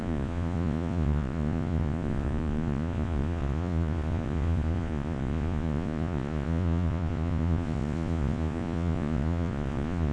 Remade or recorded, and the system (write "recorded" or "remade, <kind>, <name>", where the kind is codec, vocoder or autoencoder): remade, vocoder, Vocos